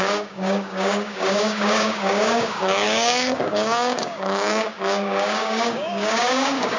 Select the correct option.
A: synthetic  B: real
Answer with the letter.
A